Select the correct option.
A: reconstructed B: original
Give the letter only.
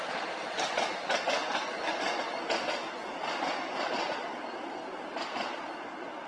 B